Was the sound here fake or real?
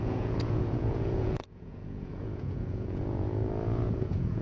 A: fake